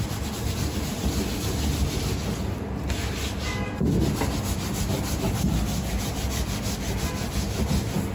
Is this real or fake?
real